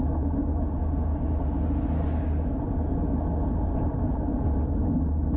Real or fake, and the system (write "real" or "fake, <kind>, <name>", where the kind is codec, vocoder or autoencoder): real